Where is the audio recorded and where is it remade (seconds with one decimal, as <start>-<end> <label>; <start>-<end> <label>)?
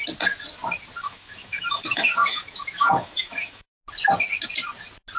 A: 0.0-1.0 recorded; 1.0-3.7 remade; 3.7-5.2 recorded